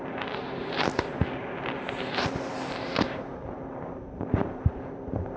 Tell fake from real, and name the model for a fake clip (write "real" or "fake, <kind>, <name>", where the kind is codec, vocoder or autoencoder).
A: fake, vocoder, BigVGAN v2